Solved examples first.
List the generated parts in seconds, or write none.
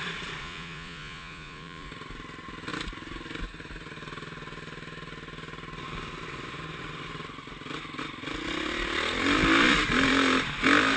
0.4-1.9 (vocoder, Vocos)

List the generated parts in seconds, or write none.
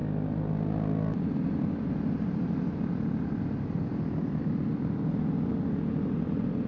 none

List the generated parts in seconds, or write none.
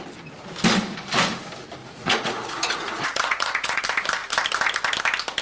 1.8-3.8 (vocoder, Vocos)